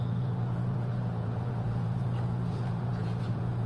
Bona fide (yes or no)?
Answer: no